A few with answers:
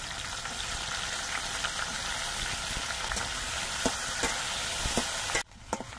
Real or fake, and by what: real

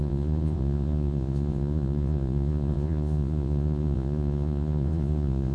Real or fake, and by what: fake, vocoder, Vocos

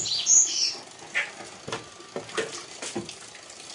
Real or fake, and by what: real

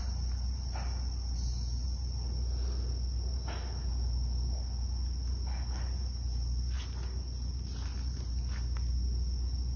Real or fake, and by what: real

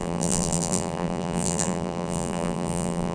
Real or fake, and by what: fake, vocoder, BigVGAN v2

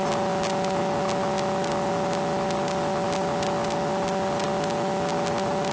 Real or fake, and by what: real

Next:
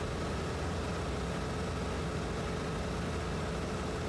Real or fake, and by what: real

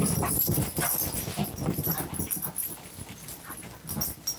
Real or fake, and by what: fake, vocoder, BigVGAN v2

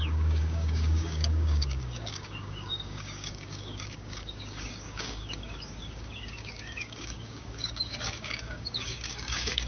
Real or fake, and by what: fake, codec, DAC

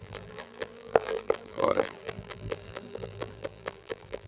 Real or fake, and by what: fake, vocoder, BigVGAN v2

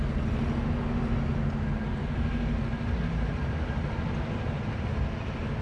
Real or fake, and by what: real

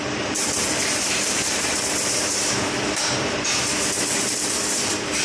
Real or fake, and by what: fake, vocoder, BigVGAN v2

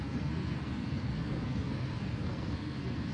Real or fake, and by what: fake, codec, SNAC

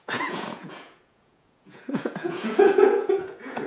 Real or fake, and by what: fake, vocoder, Vocos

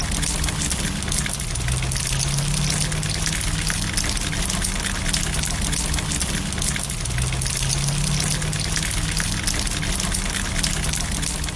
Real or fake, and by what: real